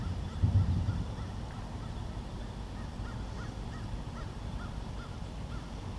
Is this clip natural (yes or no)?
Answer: yes